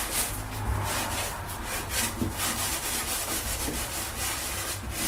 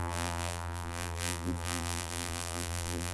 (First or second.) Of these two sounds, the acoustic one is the first